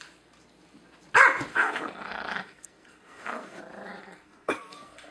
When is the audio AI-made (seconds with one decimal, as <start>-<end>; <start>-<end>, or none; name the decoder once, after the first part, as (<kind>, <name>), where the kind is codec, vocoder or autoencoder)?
1.5-3.6 (codec, SNAC); 4.0-5.1